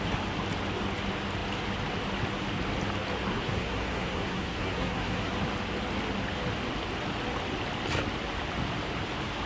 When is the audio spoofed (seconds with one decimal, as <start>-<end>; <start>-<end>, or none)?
3.3-5.3